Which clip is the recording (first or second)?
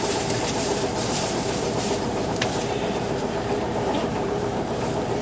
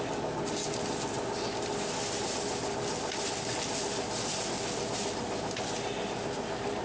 second